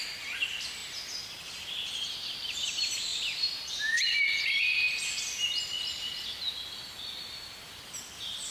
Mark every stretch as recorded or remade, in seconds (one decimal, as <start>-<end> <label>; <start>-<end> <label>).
0.0-8.5 recorded